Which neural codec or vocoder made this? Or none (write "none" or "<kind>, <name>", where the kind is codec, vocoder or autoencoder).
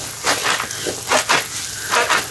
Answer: none